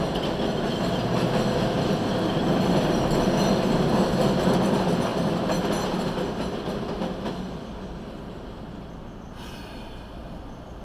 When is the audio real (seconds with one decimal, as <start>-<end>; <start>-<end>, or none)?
0.0-10.8